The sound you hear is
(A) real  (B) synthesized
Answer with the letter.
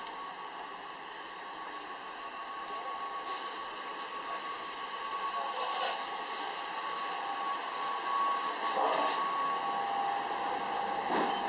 A